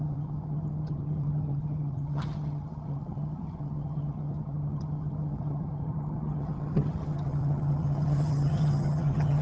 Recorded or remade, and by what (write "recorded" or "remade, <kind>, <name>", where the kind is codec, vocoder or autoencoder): remade, vocoder, HiFi-GAN